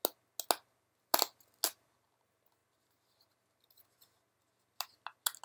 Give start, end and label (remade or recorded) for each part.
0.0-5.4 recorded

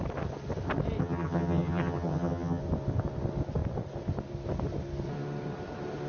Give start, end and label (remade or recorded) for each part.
0.0-1.0 recorded; 1.0-2.6 remade; 2.6-6.1 recorded

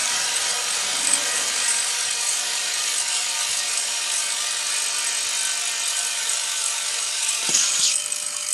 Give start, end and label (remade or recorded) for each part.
0.0-4.7 remade; 4.7-5.9 recorded; 5.9-8.5 remade

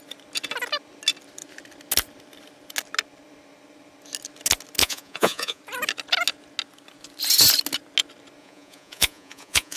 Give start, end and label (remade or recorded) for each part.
0.0-4.8 recorded; 4.8-5.6 remade; 5.6-8.4 recorded; 8.4-9.8 remade